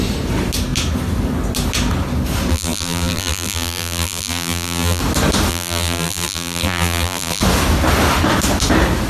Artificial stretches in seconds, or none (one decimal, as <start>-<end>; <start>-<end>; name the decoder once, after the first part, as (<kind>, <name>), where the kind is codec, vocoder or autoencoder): 2.5-5.0 (vocoder, BigVGAN v2); 5.5-7.4